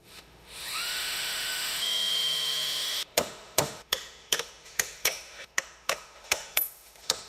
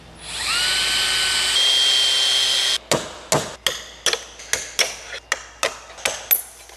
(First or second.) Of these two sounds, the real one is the second